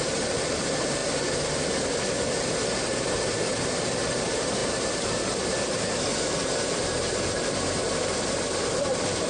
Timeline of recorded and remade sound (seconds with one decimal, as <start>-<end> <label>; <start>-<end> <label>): 0.0-1.0 remade; 1.0-2.2 recorded; 2.2-9.3 remade